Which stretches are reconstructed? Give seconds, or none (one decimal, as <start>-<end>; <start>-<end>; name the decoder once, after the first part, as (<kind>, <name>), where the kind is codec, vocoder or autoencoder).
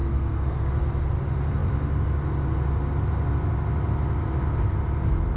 0.0-0.6 (codec, SNAC)